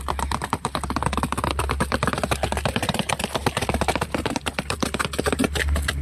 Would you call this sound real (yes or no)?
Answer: yes